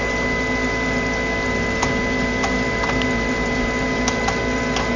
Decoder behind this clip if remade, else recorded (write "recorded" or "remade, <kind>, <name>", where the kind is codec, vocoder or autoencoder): recorded